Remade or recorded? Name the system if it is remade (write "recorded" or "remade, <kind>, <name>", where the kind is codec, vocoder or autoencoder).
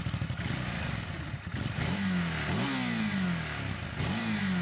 recorded